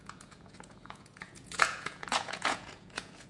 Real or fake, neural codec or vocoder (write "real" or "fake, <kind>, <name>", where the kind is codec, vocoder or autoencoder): fake, vocoder, Vocos